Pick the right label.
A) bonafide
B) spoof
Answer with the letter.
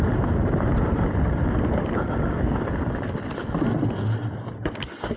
A